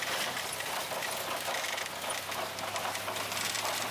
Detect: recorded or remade recorded